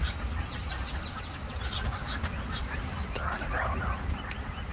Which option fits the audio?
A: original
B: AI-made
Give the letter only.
A